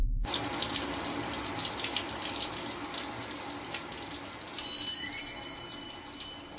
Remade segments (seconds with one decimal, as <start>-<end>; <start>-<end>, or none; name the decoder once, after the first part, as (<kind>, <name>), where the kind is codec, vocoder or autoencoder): none